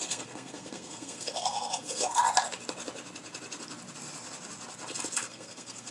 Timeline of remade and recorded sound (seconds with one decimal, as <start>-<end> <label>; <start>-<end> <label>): 0.0-2.2 remade; 2.2-5.2 recorded; 5.2-5.9 remade